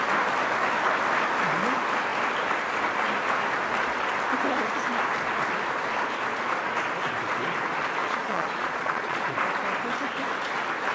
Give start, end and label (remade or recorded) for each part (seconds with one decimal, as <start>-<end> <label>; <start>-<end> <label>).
0.0-8.0 recorded; 8.0-9.3 remade; 9.3-10.9 recorded